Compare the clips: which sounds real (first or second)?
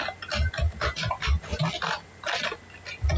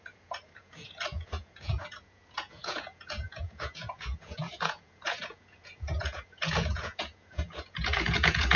first